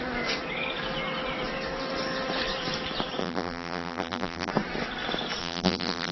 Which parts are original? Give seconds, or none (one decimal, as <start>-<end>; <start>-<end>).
0.0-3.2; 4.5-5.4